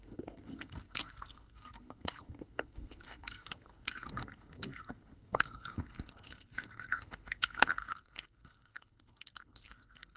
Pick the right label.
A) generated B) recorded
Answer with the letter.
A